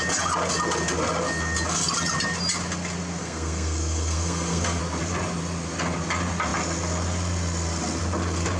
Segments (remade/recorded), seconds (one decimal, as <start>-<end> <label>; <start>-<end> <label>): 0.0-3.2 recorded; 3.2-4.8 remade; 4.8-8.6 recorded